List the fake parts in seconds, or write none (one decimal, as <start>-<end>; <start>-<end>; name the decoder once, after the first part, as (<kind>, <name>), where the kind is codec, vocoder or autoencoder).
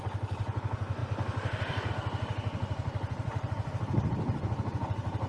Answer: 1.0-1.9 (vocoder, BigVGAN v2); 3.3-4.5